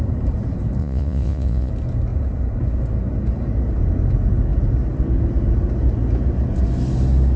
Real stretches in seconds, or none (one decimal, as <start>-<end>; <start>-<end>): 0.0-0.8; 1.7-7.4